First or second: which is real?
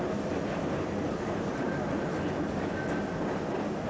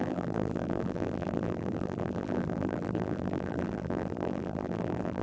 first